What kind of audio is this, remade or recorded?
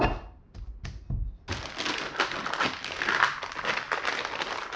recorded